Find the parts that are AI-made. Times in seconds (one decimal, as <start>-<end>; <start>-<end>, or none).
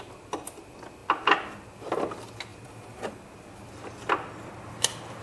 2.5-3.1